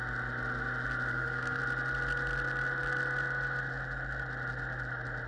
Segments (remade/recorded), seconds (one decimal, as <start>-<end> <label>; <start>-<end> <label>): 0.0-1.1 recorded; 1.1-1.6 remade; 1.6-5.3 recorded